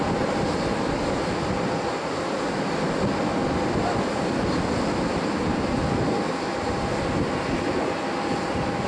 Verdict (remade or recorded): recorded